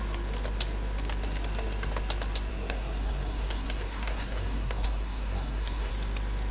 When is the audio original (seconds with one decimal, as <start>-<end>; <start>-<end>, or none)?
0.0-2.5; 5.9-6.5

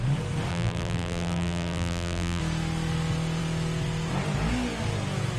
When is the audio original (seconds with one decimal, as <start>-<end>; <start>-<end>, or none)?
0.0-0.5; 2.4-5.4